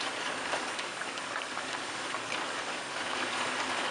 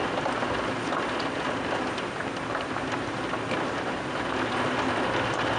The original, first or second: second